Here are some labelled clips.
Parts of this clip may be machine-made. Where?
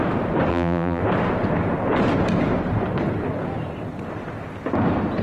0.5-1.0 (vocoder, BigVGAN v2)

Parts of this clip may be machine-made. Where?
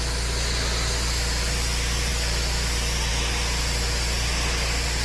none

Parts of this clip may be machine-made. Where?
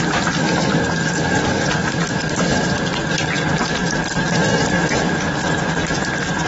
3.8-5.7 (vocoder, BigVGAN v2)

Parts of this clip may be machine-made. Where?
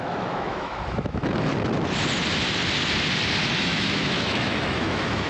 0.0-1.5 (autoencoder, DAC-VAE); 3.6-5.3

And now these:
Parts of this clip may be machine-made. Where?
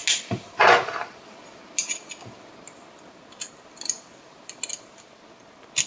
none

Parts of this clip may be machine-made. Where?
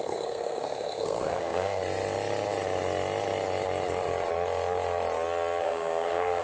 0.0-1.8 (codec, SNAC); 5.6-6.4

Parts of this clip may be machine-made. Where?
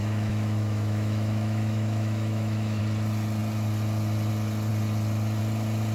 0.0-2.8 (autoencoder, DAC-VAE)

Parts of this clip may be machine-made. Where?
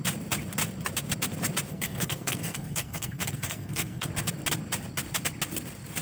1.7-4.1 (codec, SNAC)